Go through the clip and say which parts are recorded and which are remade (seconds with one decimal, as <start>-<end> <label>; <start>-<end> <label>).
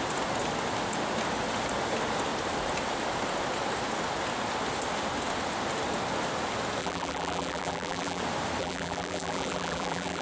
0.0-6.8 recorded; 6.8-8.2 remade; 8.2-8.6 recorded; 8.6-10.2 remade